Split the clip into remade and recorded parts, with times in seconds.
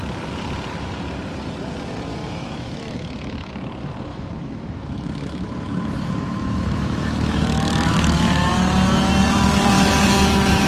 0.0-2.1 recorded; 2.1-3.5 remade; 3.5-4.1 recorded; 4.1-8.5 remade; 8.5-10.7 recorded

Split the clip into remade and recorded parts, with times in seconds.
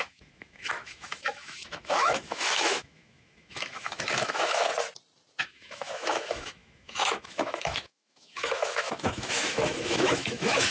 0.0-4.7 remade; 4.7-5.4 recorded; 5.4-10.7 remade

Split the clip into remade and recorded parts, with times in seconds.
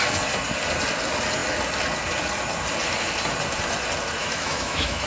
0.0-4.2 recorded; 4.2-5.1 remade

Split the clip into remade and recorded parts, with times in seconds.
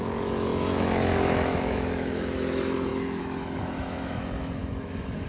0.0-5.3 remade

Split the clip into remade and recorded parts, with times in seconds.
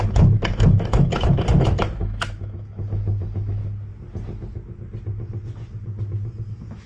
0.0-3.6 remade; 3.6-6.5 recorded; 6.5-6.9 remade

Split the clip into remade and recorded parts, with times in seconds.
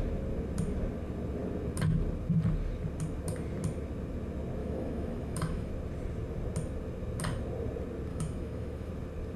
0.0-4.6 recorded; 4.6-5.7 remade; 5.7-8.1 recorded; 8.1-8.9 remade; 8.9-9.4 recorded